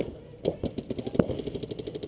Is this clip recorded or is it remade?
recorded